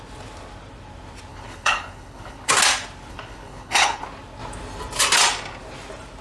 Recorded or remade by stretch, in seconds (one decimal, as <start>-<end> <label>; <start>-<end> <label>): 0.0-1.3 recorded; 1.3-2.5 remade; 2.5-3.1 recorded; 3.1-4.0 remade; 4.0-6.2 recorded